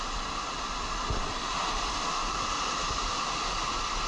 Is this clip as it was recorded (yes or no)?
yes